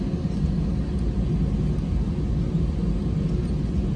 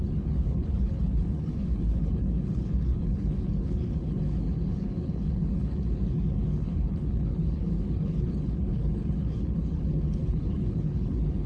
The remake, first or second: second